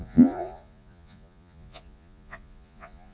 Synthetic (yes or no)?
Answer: yes